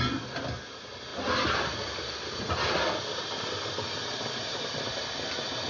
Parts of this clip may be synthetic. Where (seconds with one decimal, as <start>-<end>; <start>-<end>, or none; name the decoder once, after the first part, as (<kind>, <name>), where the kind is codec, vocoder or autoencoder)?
none